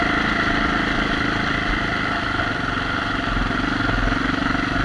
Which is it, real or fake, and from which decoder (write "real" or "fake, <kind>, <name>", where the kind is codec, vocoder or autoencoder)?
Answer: fake, vocoder, BigVGAN v2